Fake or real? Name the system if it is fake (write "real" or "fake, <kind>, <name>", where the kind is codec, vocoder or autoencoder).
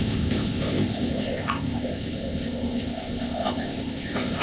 fake, codec, ZipCodec